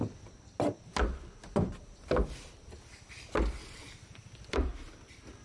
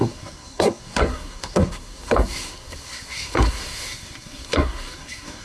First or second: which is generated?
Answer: second